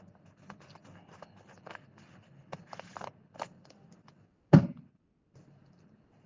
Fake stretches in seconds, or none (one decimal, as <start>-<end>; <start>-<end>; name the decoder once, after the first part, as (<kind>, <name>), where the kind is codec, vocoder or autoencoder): 0.0-0.8 (vocoder, BigVGAN v2); 4.6-6.3